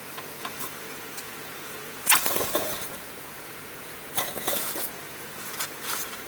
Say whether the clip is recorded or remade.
remade